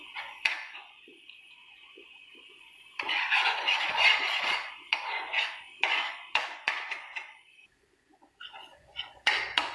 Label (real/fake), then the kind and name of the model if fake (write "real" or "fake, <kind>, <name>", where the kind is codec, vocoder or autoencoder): fake, vocoder, Vocos